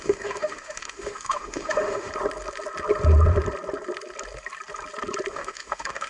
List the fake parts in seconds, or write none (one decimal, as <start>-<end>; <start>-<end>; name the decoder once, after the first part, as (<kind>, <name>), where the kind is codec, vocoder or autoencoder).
0.0-2.1 (autoencoder, DAC-VAE); 5.3-6.1